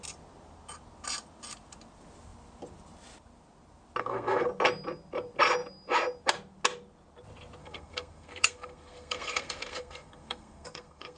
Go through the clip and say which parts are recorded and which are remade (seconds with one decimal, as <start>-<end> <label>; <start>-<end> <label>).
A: 0.0-4.0 recorded; 4.0-4.5 remade; 4.5-7.6 recorded; 7.6-11.2 remade